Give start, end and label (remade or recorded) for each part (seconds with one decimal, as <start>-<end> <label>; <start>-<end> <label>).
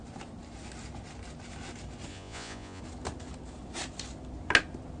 0.0-2.1 recorded; 2.1-2.8 remade; 2.8-5.0 recorded